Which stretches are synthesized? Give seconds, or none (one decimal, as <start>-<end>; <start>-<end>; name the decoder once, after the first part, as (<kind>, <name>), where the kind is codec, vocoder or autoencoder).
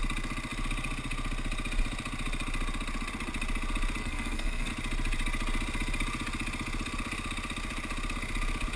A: 4.0-4.7 (codec, SNAC)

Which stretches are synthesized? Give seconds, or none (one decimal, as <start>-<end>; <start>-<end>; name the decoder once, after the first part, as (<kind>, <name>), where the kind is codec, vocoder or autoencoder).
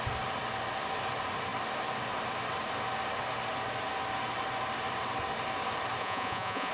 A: 6.0-6.7 (vocoder, Vocos)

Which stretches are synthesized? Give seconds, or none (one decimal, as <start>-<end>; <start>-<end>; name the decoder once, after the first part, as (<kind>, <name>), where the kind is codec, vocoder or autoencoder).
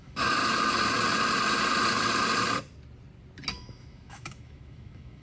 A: 0.0-0.4 (autoencoder, DAC-VAE); 3.5-5.2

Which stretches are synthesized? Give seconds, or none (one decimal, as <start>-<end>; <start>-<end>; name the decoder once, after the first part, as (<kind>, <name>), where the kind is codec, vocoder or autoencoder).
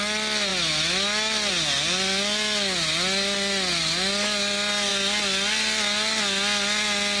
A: none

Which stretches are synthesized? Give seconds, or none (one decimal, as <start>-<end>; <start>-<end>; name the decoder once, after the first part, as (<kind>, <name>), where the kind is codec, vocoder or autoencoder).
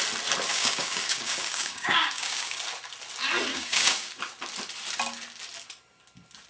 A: 0.5-2.6 (codec, DAC); 3.5-4.1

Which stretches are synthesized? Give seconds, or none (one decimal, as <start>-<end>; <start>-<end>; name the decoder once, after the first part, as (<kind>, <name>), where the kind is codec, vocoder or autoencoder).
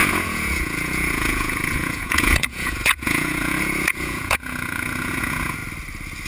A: 0.0-5.6 (vocoder, Vocos)